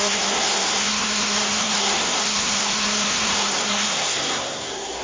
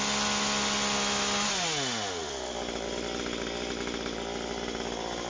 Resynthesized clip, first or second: first